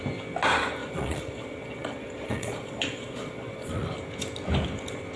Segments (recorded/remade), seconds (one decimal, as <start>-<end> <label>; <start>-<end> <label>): 0.0-0.8 recorded; 0.8-3.9 remade; 3.9-5.2 recorded

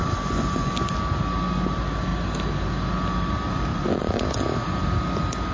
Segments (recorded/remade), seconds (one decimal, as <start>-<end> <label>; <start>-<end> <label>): 0.0-0.7 remade; 0.7-3.7 recorded; 3.7-4.2 remade; 4.2-5.5 recorded

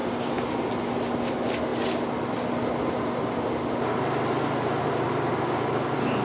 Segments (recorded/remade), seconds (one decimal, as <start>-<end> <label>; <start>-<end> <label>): 0.0-6.2 recorded

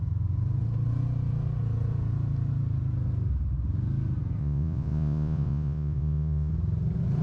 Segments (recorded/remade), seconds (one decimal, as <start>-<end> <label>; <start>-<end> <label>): 0.0-4.4 recorded; 4.4-6.5 remade; 6.5-7.2 recorded

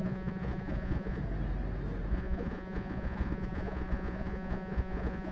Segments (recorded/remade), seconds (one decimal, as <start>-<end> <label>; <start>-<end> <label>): 0.0-1.2 remade; 1.2-2.1 recorded; 2.1-5.3 remade